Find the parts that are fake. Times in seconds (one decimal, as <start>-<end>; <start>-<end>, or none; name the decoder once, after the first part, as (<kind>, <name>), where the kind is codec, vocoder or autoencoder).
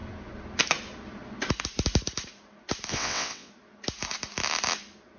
2.9-3.5 (vocoder, WaveNeXt)